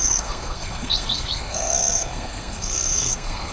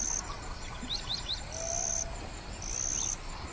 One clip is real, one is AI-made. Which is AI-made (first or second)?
first